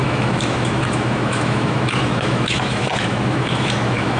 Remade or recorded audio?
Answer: remade